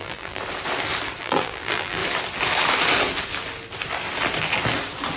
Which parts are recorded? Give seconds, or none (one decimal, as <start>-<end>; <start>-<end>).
0.4-1.2; 2.0-5.2

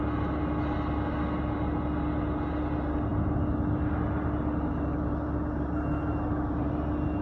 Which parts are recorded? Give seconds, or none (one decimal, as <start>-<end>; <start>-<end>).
0.0-7.2